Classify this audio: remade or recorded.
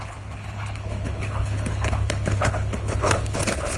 remade